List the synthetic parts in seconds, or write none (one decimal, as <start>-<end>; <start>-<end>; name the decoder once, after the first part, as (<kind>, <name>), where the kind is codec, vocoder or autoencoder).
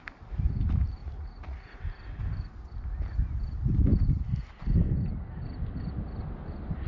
1.0-1.8 (vocoder, Vocos)